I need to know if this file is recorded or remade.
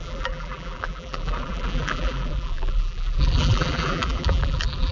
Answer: remade